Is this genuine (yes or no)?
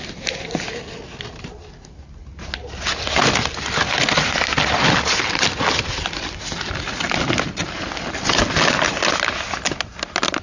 yes